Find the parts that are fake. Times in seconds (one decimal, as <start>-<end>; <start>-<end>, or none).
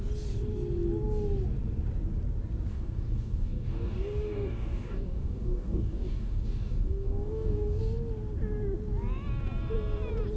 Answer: 2.7-7.8